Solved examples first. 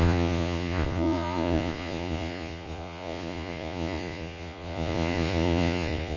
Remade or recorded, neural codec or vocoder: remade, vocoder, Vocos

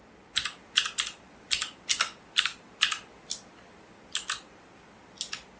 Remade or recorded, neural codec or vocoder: recorded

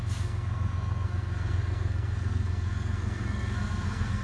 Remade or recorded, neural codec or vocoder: remade, codec, SNAC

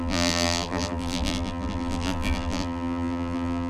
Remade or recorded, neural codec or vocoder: remade, vocoder, BigVGAN v2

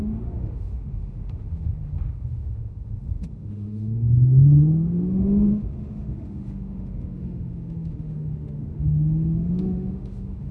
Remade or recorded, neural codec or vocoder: remade, autoencoder, DAC-VAE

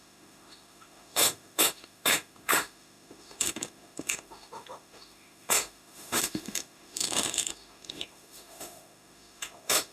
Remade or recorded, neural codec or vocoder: remade, autoencoder, DAC-VAE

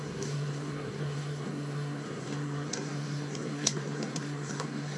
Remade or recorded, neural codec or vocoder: remade, codec, SNAC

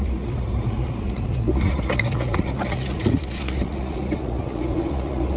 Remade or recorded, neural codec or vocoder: remade, vocoder, Vocos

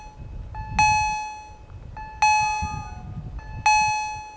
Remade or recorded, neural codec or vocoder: recorded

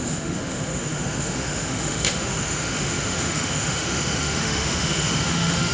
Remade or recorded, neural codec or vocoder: remade, autoencoder, DAC-VAE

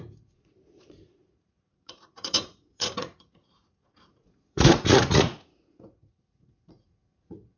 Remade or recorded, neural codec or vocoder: remade, vocoder, Vocos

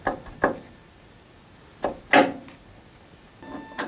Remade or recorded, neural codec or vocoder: recorded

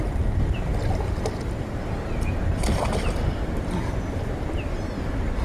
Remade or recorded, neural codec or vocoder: recorded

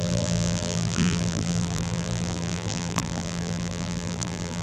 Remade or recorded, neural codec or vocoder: remade, vocoder, BigVGAN v2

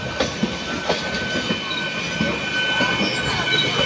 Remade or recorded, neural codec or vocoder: recorded